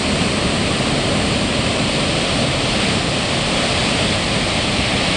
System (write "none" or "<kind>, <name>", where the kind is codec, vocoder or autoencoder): none